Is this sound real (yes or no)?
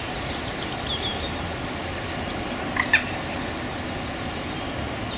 yes